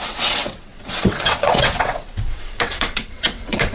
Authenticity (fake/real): fake